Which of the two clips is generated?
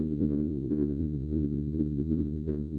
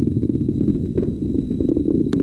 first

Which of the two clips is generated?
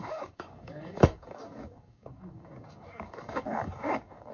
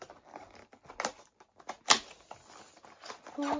first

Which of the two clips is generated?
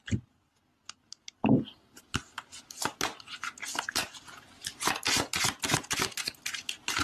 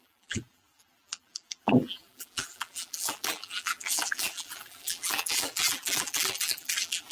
second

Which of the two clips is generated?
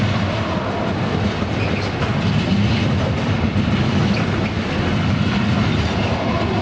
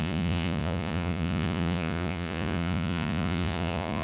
second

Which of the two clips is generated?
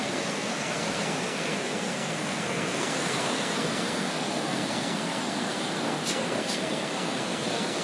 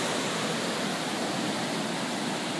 first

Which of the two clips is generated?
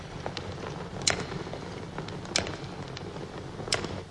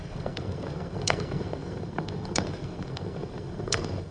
second